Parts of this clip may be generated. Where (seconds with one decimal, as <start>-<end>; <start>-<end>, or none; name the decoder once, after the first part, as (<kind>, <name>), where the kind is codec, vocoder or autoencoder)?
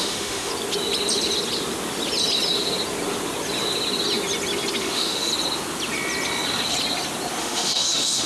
0.0-0.5 (autoencoder, DAC-VAE); 4.8-5.3; 7.4-8.3